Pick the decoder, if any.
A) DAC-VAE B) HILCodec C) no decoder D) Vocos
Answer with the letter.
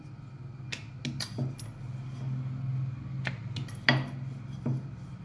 C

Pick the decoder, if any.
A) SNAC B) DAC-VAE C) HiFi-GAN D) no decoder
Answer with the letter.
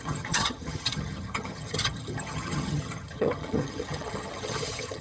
C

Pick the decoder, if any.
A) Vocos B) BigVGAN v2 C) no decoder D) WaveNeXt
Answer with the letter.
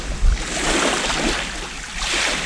C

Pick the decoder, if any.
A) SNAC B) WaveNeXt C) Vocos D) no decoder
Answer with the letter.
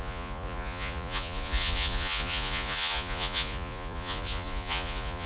C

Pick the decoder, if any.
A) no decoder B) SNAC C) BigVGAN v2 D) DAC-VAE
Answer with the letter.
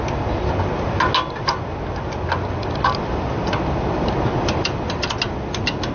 A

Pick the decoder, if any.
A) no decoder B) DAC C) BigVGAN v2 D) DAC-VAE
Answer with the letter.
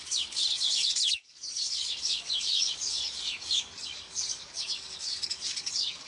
B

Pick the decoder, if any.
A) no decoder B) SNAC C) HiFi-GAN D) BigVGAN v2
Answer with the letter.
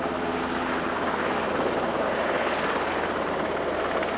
A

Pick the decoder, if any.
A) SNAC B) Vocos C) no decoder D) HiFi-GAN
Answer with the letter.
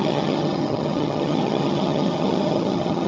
D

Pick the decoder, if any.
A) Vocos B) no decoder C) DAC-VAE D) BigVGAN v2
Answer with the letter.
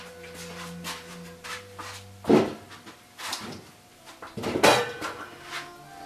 B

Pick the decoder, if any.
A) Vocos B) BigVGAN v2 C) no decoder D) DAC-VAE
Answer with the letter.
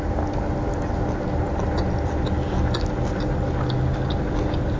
C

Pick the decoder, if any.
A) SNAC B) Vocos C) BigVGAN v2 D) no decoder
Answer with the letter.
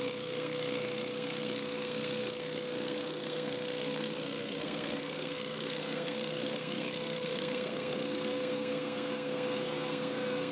A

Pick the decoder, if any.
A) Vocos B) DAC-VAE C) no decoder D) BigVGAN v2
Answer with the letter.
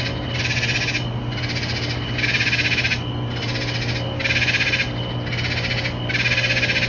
C